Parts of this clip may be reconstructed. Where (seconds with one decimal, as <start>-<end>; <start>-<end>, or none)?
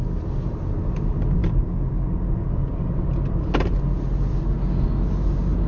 none